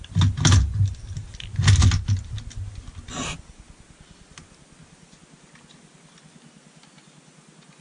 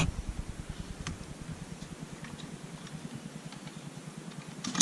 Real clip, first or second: first